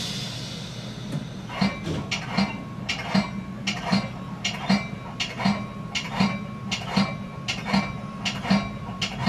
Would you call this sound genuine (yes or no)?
yes